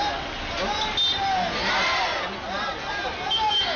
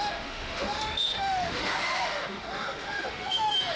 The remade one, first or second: second